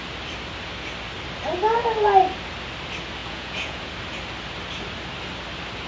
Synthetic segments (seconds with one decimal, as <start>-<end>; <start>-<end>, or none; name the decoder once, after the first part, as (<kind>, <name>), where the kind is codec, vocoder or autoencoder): 3.2-3.8 (vocoder, Vocos)